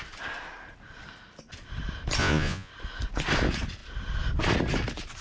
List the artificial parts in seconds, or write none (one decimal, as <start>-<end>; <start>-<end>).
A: 2.2-2.7